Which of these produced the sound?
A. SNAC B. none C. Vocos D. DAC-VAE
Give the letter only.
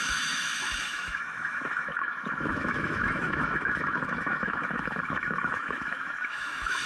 D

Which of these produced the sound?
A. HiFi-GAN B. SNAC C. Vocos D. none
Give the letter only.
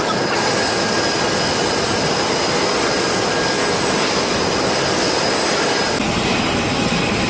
D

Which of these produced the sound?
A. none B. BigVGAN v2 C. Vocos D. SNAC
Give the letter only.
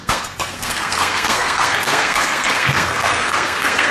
D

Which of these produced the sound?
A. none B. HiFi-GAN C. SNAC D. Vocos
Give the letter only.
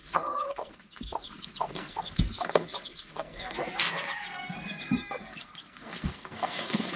C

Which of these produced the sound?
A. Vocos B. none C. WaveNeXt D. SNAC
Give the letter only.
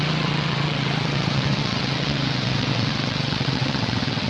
C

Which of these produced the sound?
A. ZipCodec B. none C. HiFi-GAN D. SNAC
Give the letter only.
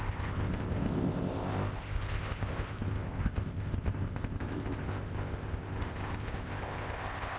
A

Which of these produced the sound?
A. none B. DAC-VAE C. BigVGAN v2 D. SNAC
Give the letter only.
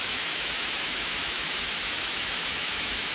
B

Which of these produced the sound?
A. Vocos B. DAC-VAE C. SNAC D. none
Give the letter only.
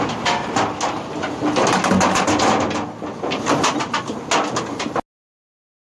D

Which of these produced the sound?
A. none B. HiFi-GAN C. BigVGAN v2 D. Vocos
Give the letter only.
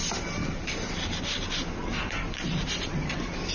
A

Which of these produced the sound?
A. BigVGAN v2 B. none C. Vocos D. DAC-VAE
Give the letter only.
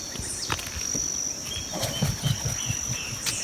B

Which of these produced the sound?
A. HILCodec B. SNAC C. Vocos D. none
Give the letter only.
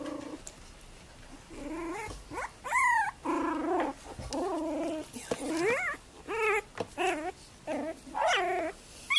D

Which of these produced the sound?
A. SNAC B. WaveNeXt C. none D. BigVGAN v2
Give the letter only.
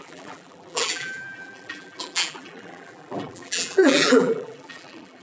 D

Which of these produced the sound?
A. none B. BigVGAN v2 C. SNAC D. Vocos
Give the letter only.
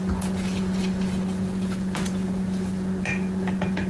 D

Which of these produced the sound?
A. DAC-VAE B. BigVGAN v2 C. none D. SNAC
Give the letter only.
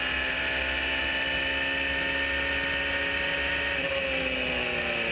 C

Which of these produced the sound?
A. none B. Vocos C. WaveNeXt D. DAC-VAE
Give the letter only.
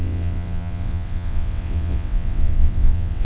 C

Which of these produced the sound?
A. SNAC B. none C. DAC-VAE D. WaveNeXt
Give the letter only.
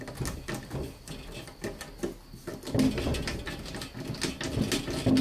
B